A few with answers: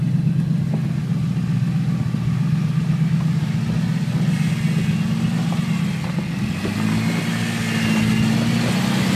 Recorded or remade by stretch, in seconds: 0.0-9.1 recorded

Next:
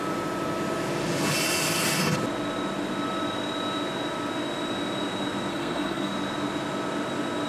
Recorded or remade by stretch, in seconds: 0.0-5.5 recorded; 5.5-6.1 remade; 6.1-7.5 recorded

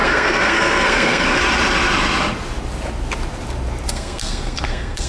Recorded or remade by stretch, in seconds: 0.0-1.4 remade; 1.4-3.9 recorded; 3.9-5.1 remade